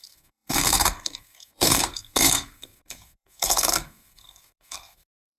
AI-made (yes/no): yes